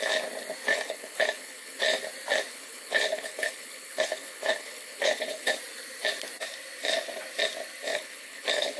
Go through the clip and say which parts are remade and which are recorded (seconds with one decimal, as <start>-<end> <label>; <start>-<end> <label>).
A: 0.0-0.7 recorded; 0.7-1.8 remade; 1.8-2.5 recorded; 2.5-5.5 remade; 5.5-7.9 recorded; 7.9-8.8 remade